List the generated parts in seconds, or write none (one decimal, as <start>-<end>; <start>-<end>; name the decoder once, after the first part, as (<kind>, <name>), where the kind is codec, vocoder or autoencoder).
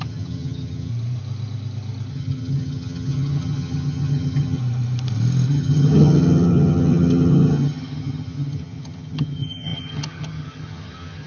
0.0-0.9 (vocoder, HiFi-GAN); 2.1-4.6; 5.5-11.3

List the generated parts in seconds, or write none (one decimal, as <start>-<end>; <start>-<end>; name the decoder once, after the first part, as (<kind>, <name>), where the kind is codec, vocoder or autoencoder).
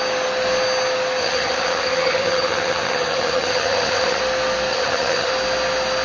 1.2-4.2 (vocoder, HiFi-GAN); 4.7-5.3